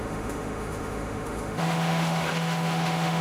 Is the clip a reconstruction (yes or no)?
yes